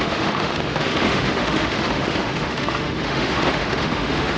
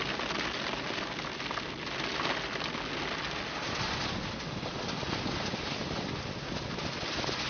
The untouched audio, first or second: second